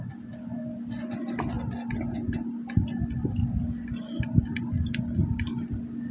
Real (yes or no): yes